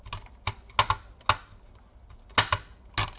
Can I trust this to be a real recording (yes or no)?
yes